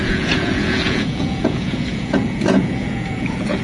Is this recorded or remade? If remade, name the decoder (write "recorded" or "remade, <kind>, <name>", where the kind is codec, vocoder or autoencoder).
remade, vocoder, Vocos